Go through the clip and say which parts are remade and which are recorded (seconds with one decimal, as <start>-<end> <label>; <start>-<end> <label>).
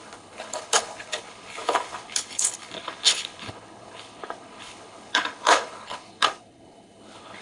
0.0-7.4 remade